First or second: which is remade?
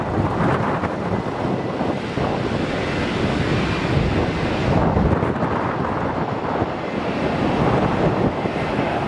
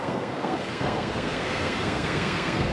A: second